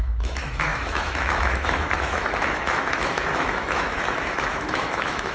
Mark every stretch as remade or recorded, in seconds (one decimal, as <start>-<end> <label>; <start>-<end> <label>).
0.0-5.3 remade

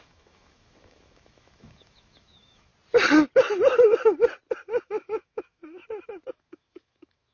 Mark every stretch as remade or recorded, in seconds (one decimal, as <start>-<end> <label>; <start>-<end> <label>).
0.0-2.7 remade; 2.7-4.8 recorded; 4.8-5.8 remade; 5.8-6.3 recorded; 6.3-7.3 remade